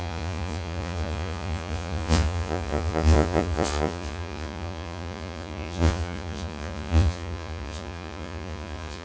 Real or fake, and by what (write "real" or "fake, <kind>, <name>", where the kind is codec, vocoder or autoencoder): fake, vocoder, Vocos